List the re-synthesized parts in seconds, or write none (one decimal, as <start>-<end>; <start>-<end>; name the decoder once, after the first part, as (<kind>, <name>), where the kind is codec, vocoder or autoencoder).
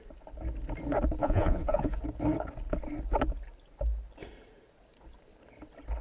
1.2-2.0 (vocoder, Vocos)